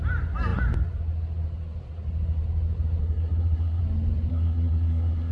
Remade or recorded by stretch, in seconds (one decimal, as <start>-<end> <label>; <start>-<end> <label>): 0.0-3.0 recorded; 3.0-3.8 remade; 3.8-4.3 recorded; 4.3-5.3 remade